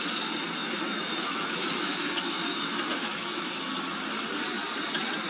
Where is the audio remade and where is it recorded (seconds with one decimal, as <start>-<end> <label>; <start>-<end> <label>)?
0.0-0.6 recorded; 0.6-3.6 remade; 3.6-5.3 recorded